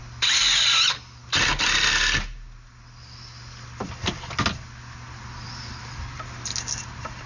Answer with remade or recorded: recorded